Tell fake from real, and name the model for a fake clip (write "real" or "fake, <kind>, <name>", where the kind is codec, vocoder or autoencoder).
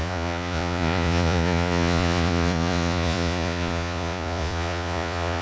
fake, vocoder, Vocos